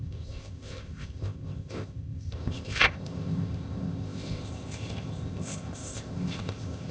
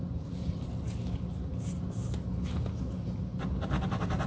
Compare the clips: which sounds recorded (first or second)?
second